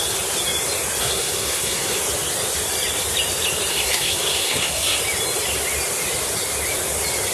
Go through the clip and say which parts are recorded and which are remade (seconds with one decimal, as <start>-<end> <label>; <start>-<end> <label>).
0.0-1.0 recorded; 1.0-2.0 remade; 2.0-3.7 recorded; 3.7-5.0 remade; 5.0-7.3 recorded